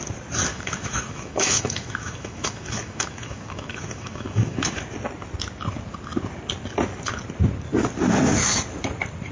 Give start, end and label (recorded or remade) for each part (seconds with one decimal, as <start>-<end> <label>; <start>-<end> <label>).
0.0-0.5 recorded; 0.5-4.8 remade; 4.8-9.3 recorded